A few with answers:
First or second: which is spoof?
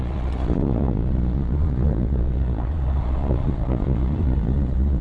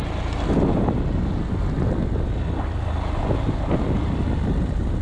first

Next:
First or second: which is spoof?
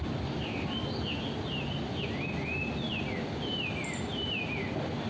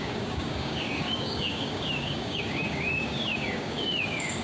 second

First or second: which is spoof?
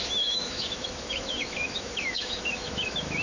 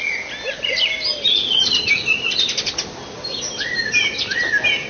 first